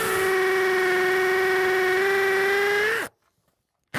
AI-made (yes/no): no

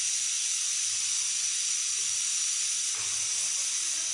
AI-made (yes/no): no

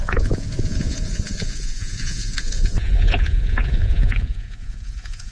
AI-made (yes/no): yes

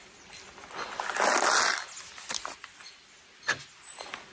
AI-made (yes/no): no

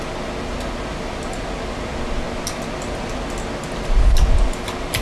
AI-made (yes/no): no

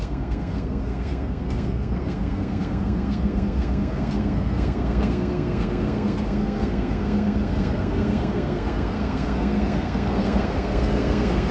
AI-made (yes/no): yes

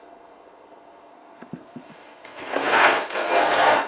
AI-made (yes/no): yes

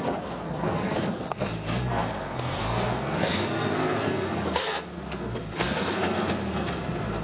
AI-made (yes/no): yes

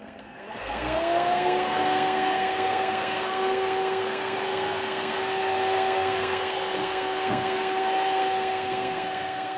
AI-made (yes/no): yes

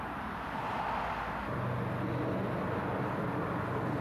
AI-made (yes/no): no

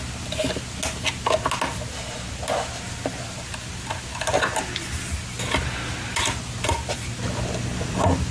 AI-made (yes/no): no